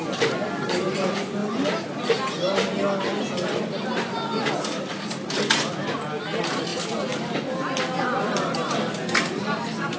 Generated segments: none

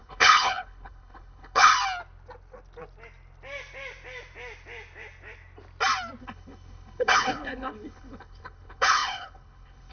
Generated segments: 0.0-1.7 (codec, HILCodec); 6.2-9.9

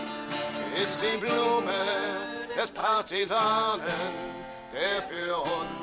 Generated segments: 0.0-5.8 (vocoder, BigVGAN v2)

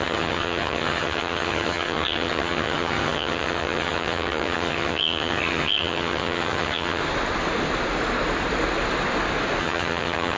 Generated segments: 0.0-7.0 (vocoder, HiFi-GAN); 9.6-10.4